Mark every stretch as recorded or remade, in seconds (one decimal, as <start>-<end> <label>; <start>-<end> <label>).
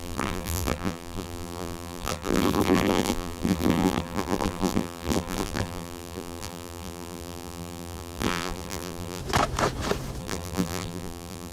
0.0-9.2 remade; 9.2-10.2 recorded; 10.2-11.5 remade